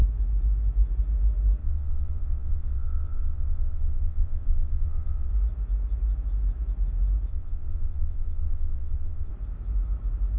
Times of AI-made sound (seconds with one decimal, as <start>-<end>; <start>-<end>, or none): 1.6-5.3; 7.3-9.3